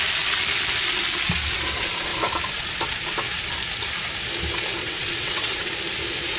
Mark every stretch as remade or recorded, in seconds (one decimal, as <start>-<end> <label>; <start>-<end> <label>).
0.0-4.8 recorded; 4.8-5.7 remade; 5.7-6.4 recorded